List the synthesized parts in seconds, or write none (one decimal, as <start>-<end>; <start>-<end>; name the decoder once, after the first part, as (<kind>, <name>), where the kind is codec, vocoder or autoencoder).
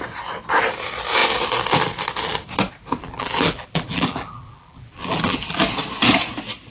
3.0-5.6 (vocoder, BigVGAN v2)